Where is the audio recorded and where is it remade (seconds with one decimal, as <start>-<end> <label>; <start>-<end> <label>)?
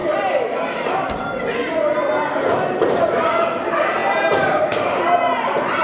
0.0-1.9 remade; 1.9-5.8 recorded